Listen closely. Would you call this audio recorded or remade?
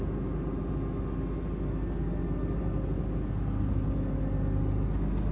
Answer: recorded